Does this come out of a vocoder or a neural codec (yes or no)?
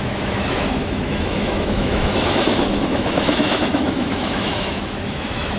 yes